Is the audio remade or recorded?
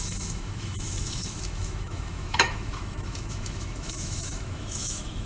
remade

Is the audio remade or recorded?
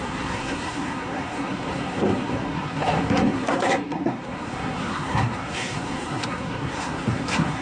remade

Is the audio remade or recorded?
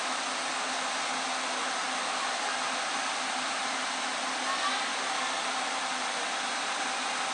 recorded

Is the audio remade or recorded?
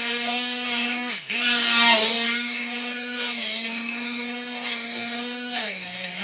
remade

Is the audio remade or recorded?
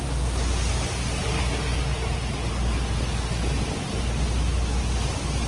recorded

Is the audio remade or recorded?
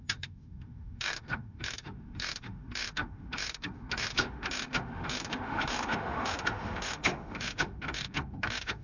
remade